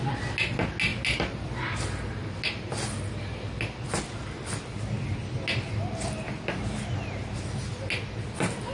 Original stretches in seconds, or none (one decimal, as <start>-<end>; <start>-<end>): 0.0-8.7